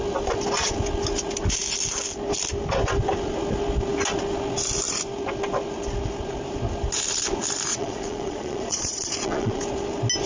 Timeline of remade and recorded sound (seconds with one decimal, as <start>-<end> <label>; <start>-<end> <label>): 0.0-7.7 recorded; 7.7-9.6 remade; 9.6-10.3 recorded